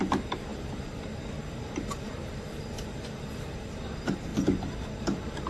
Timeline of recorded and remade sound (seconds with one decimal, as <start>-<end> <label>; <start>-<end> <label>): 0.0-4.3 remade; 4.3-5.0 recorded; 5.0-5.5 remade